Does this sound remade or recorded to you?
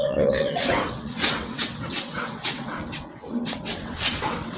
remade